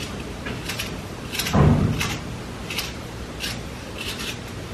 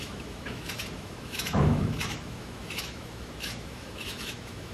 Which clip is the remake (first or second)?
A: second